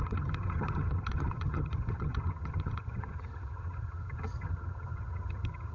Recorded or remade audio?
remade